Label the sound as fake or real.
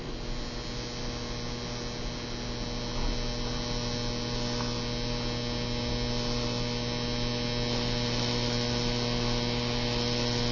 real